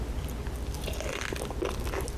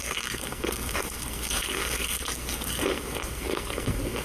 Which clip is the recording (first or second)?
first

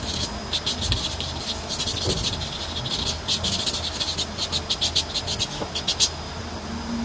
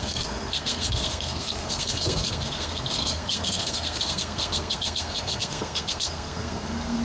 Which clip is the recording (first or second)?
first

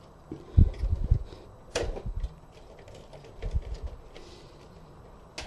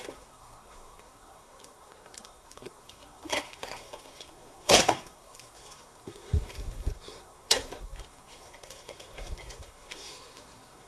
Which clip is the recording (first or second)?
first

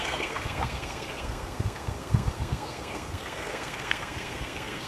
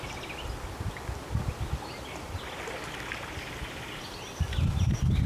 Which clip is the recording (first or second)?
second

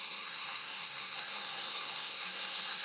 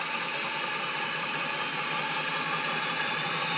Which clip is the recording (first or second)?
second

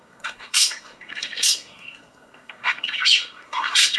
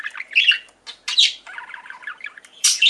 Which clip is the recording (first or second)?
second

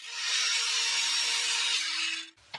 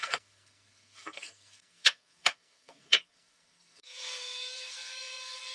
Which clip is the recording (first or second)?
first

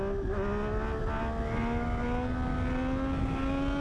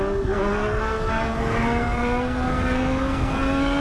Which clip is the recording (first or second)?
first